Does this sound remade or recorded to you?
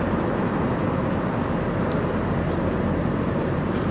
remade